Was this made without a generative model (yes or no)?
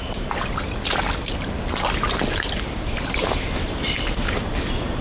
yes